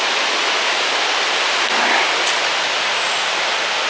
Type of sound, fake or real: real